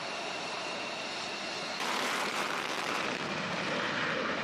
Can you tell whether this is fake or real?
fake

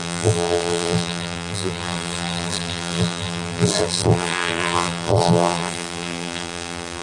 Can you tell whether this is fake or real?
fake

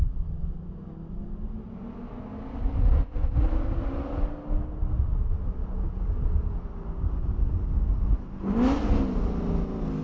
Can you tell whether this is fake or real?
real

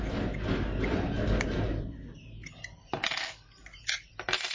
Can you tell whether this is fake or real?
real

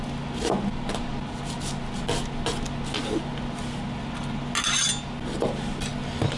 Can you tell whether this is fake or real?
real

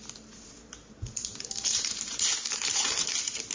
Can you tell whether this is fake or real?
fake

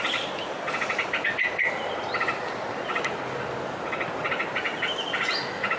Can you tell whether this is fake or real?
real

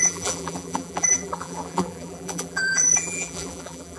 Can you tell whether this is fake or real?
fake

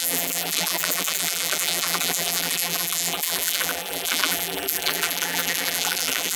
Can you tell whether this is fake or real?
fake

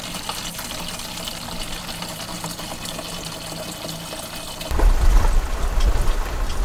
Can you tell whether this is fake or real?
real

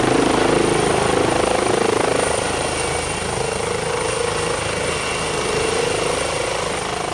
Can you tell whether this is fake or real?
real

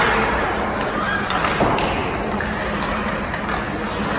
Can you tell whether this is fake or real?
real